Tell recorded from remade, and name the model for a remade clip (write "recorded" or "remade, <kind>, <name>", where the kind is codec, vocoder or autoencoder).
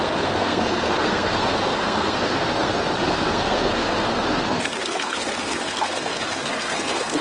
remade, codec, SNAC